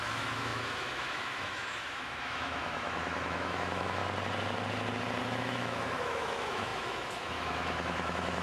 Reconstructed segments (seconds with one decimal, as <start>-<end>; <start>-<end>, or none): 0.0-4.0; 5.2-8.4